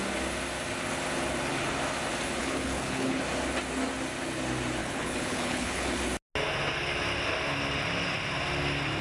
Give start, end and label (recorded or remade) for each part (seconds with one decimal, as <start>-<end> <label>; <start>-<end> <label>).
0.0-2.4 recorded; 2.4-3.2 remade; 3.2-4.8 recorded; 4.8-6.0 remade; 6.0-9.0 recorded